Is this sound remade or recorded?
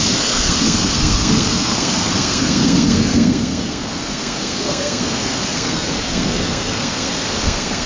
remade